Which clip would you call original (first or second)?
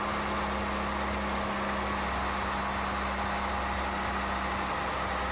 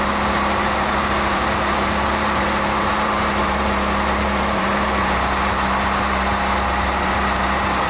first